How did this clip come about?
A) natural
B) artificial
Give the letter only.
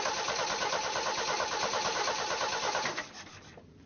A